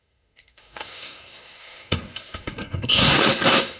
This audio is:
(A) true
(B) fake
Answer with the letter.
B